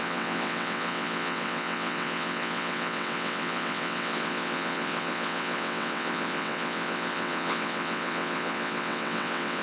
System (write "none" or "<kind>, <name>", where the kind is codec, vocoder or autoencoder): vocoder, WaveNeXt